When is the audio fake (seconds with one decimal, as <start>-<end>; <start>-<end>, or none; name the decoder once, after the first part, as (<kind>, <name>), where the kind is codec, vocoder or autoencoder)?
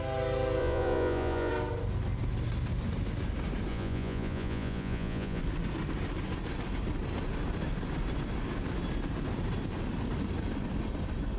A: 0.6-1.5 (vocoder, Vocos); 3.7-5.4